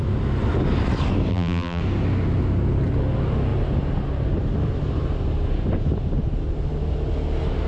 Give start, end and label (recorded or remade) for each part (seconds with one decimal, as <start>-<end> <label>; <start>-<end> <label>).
0.0-1.3 recorded; 1.3-1.8 remade; 1.8-7.7 recorded